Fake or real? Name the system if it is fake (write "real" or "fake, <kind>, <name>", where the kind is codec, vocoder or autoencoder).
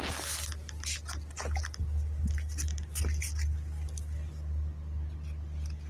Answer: real